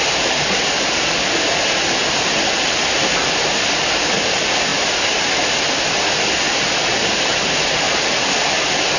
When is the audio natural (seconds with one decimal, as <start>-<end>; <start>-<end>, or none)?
0.0-9.0